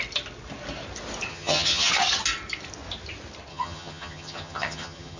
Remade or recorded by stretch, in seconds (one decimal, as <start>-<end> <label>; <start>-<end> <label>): 0.0-1.3 recorded; 1.3-1.9 remade; 1.9-3.5 recorded; 3.5-5.2 remade